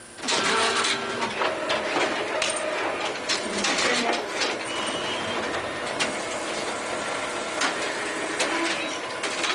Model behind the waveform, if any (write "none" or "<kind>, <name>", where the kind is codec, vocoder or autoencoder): none